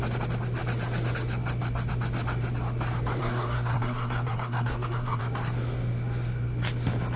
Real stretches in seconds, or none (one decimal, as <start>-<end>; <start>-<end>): 0.0-3.2; 5.2-7.2

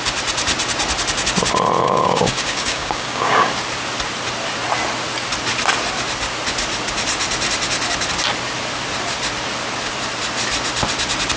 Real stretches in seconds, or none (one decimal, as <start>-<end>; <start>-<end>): 0.0-1.8; 3.5-11.4

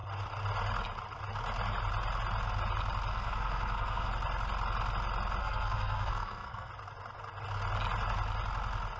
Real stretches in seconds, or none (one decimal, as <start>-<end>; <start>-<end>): 0.0-3.1; 4.1-5.4; 6.7-9.0

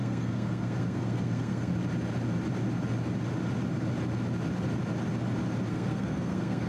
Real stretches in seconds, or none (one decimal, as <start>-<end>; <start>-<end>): 1.7-5.7